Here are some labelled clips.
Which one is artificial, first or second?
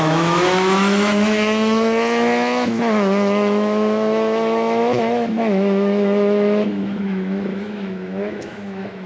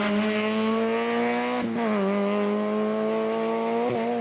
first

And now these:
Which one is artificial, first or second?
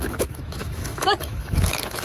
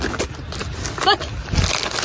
first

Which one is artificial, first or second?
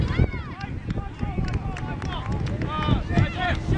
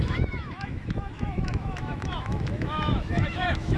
second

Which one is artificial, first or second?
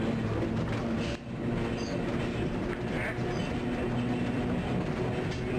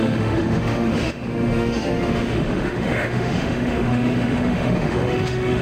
second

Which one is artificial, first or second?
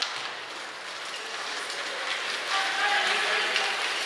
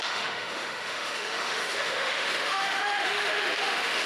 second